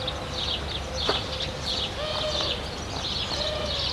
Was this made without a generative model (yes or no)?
yes